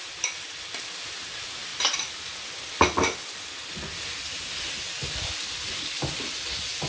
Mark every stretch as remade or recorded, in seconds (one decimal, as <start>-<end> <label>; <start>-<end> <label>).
0.0-6.9 recorded

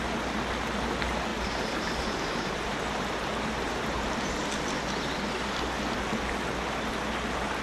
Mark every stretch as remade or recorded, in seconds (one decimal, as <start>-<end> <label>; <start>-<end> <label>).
0.0-1.3 recorded; 1.3-4.3 remade; 4.3-7.6 recorded

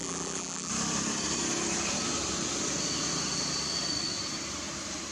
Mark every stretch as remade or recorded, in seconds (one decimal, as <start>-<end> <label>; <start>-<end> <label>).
0.0-0.7 remade; 0.7-5.1 recorded